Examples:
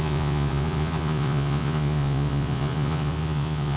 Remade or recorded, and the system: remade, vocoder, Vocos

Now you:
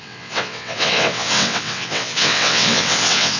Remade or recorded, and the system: remade, vocoder, WaveNeXt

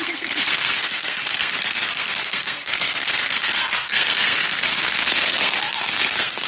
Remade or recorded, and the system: remade, codec, SNAC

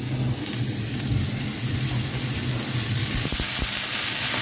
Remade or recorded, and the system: recorded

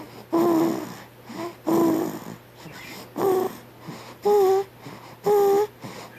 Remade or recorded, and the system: recorded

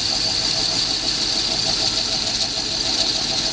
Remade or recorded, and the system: recorded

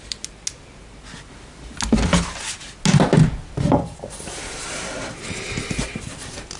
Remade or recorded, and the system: recorded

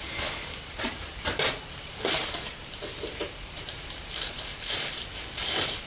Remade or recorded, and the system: remade, vocoder, BigVGAN v2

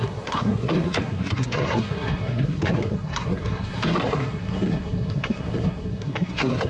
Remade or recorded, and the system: remade, codec, SNAC